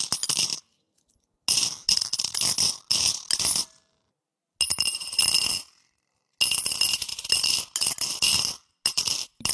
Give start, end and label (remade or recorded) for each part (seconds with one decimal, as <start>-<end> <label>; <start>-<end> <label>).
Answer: 0.0-9.5 recorded